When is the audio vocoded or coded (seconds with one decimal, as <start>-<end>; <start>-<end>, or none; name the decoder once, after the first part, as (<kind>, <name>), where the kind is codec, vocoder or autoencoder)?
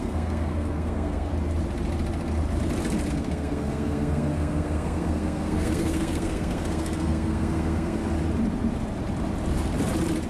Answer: 0.0-1.3 (codec, SNAC); 3.1-8.0